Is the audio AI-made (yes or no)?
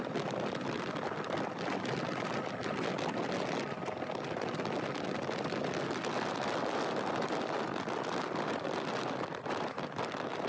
no